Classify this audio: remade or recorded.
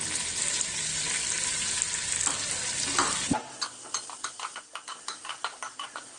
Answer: recorded